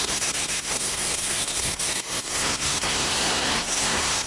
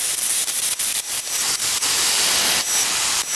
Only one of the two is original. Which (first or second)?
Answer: second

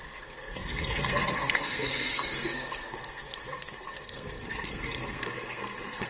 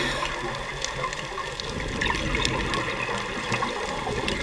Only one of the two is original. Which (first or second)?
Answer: second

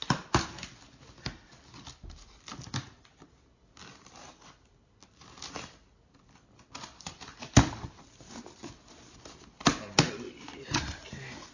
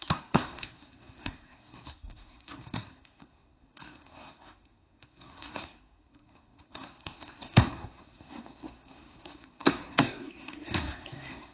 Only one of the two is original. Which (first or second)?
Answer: first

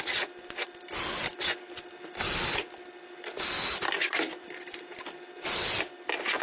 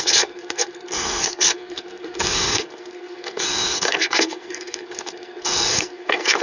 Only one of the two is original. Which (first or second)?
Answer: first